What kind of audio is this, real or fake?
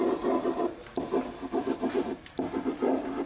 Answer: real